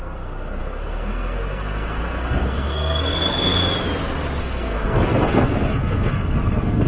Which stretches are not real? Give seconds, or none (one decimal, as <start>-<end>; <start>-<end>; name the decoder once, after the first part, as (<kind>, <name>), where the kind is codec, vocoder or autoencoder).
0.0-3.6 (codec, SNAC); 4.4-6.9